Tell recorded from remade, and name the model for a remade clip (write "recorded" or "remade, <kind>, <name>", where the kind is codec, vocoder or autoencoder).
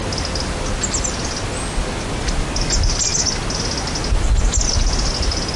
recorded